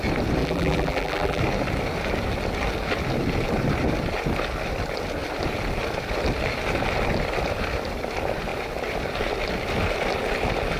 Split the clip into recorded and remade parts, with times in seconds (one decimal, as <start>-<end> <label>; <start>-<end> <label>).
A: 0.0-0.4 recorded; 0.4-1.4 remade; 1.4-10.8 recorded